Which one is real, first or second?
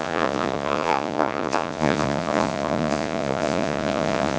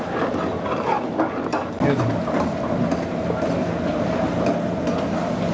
second